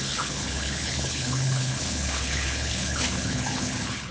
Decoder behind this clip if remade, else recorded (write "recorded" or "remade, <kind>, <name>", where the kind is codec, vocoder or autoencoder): remade, codec, HILCodec